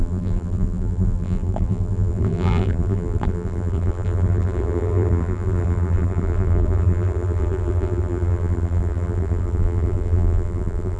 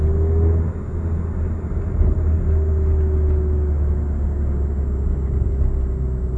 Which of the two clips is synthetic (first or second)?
first